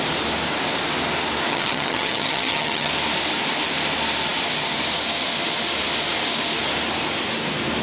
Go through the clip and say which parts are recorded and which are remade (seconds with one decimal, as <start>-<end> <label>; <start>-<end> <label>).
0.0-1.5 recorded; 1.5-2.9 remade; 2.9-7.8 recorded

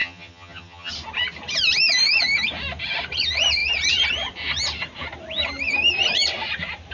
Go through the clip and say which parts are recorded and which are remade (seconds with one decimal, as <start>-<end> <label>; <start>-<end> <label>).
0.0-0.9 remade; 0.9-6.9 recorded

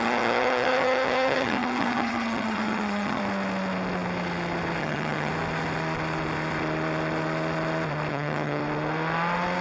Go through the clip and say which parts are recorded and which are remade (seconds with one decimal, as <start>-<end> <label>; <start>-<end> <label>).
0.0-3.2 remade; 3.2-4.8 recorded; 4.8-5.3 remade; 5.3-8.1 recorded; 8.1-8.6 remade; 8.6-9.6 recorded

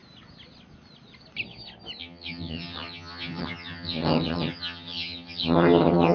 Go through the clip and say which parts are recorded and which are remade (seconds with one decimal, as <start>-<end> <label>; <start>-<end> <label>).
0.0-2.0 recorded; 2.0-6.1 remade

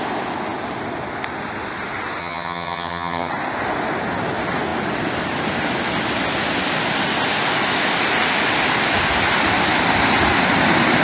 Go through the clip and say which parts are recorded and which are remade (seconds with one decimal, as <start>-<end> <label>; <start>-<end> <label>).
0.0-2.2 recorded; 2.2-3.3 remade; 3.3-11.0 recorded

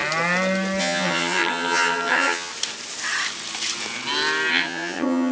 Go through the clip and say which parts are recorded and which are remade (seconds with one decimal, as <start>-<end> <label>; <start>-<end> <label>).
0.0-0.8 recorded; 0.8-2.5 remade; 2.5-4.5 recorded; 4.5-5.3 remade

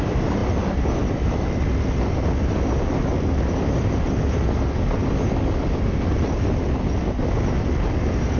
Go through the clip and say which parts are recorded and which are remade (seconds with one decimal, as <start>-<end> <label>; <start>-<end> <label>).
0.0-8.4 recorded

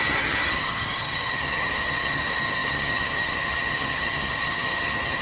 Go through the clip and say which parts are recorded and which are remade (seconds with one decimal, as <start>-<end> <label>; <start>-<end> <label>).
0.0-5.2 remade